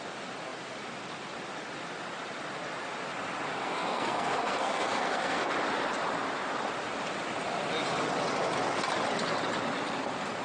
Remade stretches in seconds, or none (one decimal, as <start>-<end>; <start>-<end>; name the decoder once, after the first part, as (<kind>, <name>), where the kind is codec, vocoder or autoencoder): 3.6-5.5 (codec, SNAC)